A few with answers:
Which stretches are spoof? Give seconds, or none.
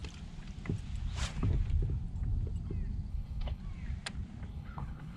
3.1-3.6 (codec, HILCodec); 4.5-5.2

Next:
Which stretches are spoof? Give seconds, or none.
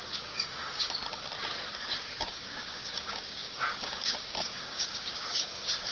0.0-1.0 (codec, DAC); 2.0-5.9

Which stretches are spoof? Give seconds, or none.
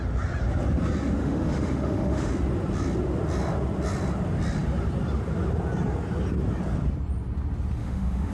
1.2-2.3 (autoencoder, DAC-VAE); 7.8-8.3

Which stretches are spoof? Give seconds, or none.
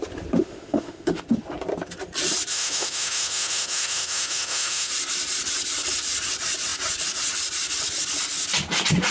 0.4-1.2 (autoencoder, DAC-VAE); 2.5-4.9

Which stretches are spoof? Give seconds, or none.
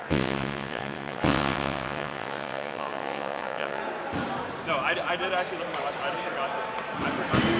0.0-3.8 (vocoder, WaveNeXt)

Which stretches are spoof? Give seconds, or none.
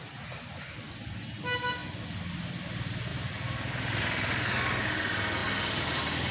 3.1-4.5 (vocoder, BigVGAN v2)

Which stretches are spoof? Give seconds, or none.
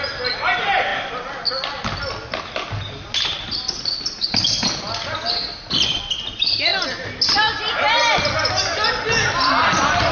none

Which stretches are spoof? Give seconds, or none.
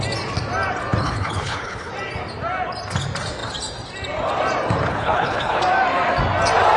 1.0-1.9 (codec, HILCodec); 4.9-5.6